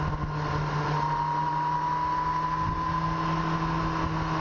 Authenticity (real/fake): real